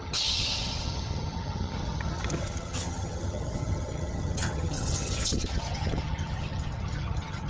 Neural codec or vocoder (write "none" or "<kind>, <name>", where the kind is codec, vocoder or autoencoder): vocoder, HiFi-GAN